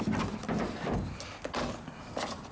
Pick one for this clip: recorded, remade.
recorded